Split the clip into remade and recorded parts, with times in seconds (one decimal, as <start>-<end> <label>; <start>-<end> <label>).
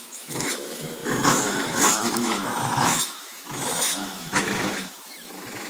0.0-5.7 remade